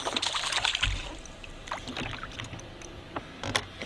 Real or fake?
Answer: real